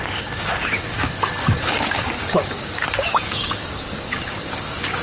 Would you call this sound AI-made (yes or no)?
yes